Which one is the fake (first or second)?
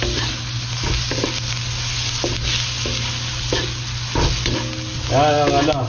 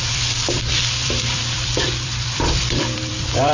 second